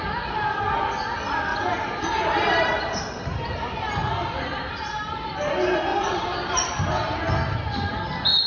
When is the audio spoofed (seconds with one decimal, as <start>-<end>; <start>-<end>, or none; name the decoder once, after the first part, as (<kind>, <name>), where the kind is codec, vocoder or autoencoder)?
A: 1.5-5.1 (vocoder, BigVGAN v2); 5.9-6.8